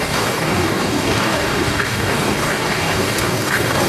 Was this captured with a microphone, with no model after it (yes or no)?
no